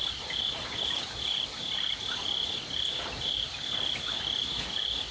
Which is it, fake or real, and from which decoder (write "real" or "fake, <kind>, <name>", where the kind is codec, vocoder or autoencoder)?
real